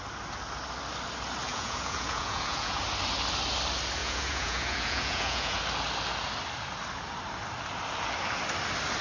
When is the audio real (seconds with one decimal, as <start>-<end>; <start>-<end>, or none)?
0.0-1.5; 2.8-4.0; 5.6-9.0